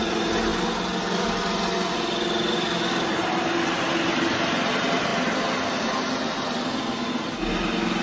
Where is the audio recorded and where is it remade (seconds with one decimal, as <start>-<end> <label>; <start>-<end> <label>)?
0.0-8.0 recorded